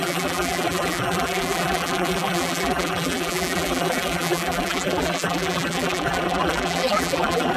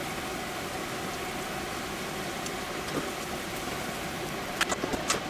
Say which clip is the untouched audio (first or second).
second